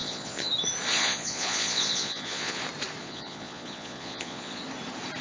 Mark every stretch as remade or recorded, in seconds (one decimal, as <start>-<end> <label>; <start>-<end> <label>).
0.0-0.5 remade; 0.5-0.9 recorded; 0.9-2.6 remade; 2.6-3.0 recorded; 3.0-4.6 remade; 4.6-5.2 recorded